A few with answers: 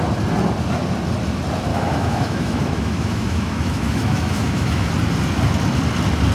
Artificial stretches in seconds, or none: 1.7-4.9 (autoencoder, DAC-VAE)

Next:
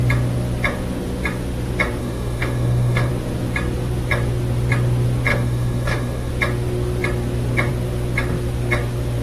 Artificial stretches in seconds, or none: 2.0-3.1 (autoencoder, DAC-VAE); 5.3-6.3

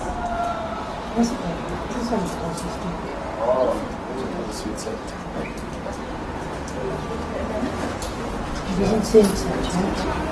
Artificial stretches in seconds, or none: none

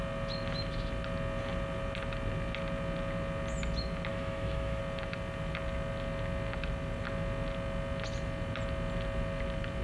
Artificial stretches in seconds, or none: 4.1-4.8 (autoencoder, DAC-VAE)

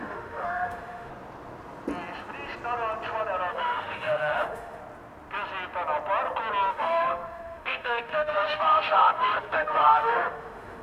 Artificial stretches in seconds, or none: 0.0-1.1 (autoencoder, DAC-VAE); 3.5-4.8; 6.7-10.8